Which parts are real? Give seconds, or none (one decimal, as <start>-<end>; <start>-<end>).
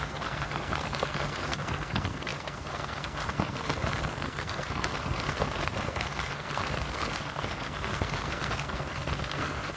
none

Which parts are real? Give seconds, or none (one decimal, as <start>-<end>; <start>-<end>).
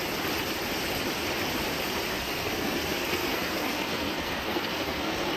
0.0-2.1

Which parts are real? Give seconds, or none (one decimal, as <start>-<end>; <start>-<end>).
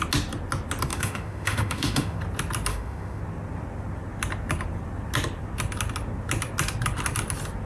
0.0-0.9; 2.2-2.7; 3.2-7.7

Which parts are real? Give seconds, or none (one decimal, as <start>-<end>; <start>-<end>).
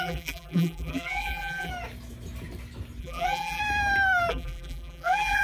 1.7-3.0; 3.6-4.3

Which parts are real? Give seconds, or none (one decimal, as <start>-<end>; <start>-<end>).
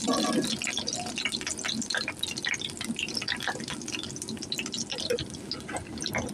0.0-6.3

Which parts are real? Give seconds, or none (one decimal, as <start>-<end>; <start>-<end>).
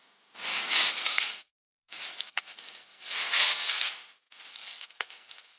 0.0-0.5; 3.9-4.5